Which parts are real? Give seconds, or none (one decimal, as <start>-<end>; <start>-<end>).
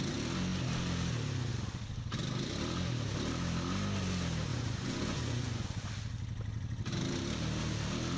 0.0-4.5; 5.9-8.2